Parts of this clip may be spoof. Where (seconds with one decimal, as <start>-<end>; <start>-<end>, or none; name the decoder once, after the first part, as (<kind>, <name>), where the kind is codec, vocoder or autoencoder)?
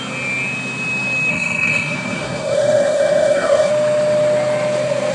1.3-3.7 (codec, SNAC)